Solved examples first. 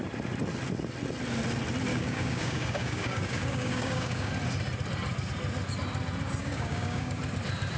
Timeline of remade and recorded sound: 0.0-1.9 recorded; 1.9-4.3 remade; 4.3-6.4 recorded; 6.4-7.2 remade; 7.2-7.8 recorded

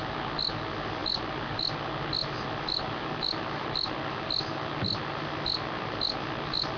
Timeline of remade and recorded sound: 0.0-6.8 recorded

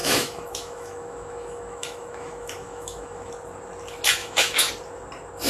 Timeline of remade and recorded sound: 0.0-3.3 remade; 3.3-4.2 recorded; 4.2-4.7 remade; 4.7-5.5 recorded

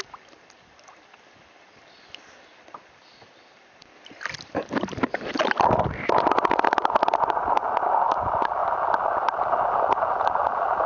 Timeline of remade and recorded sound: 0.0-10.9 recorded

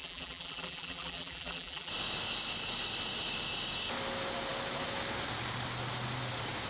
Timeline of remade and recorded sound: 0.0-1.9 remade; 1.9-6.7 recorded